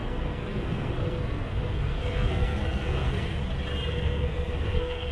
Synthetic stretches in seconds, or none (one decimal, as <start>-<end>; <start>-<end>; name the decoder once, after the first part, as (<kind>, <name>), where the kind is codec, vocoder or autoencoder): 0.0-3.4 (codec, SNAC); 3.9-5.1